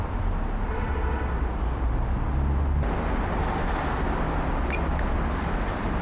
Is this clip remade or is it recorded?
recorded